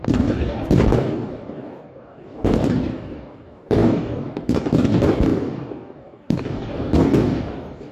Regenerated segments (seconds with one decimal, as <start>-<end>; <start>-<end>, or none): 0.0-7.9